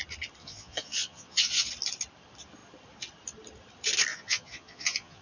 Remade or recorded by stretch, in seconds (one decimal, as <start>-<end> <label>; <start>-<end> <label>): 0.0-0.4 recorded; 0.4-1.7 remade; 1.7-4.1 recorded; 4.1-5.2 remade